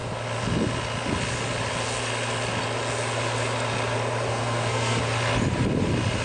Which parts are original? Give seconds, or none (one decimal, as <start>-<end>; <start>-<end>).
0.0-4.3; 5.0-6.2

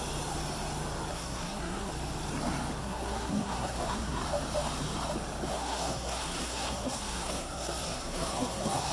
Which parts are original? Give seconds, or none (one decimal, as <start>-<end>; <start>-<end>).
0.0-1.1; 1.9-2.8; 4.2-5.5

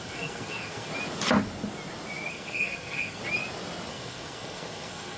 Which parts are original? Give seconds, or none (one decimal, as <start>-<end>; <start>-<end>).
0.9-2.3; 3.2-3.9

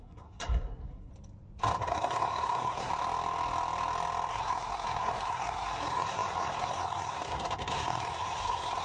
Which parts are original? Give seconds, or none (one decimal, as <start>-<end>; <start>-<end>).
1.1-1.8; 2.9-4.3